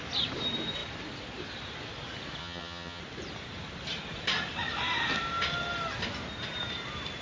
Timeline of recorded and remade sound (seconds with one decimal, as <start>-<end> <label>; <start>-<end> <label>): 0.0-2.4 recorded; 2.4-3.0 remade; 3.0-7.2 recorded